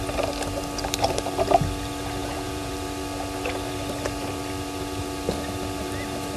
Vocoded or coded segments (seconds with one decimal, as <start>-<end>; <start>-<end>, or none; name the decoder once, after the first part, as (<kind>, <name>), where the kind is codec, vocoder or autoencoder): 2.2-2.7 (vocoder, Vocos)